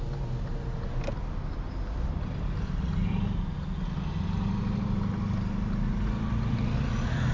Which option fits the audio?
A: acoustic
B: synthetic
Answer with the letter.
A